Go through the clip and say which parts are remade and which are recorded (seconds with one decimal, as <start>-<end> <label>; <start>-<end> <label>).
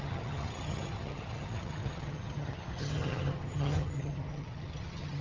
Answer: 0.0-5.2 remade